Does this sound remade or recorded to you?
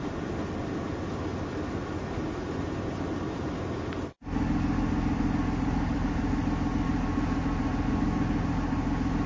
recorded